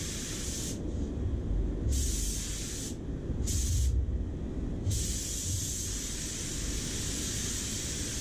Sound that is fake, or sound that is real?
real